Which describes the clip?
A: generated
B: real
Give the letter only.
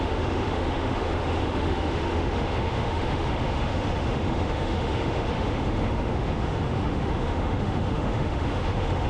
A